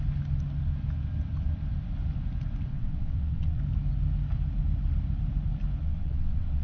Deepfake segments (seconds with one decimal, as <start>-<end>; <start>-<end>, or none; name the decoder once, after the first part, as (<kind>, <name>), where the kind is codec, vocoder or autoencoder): 2.7-3.6 (vocoder, WaveNeXt); 5.8-6.6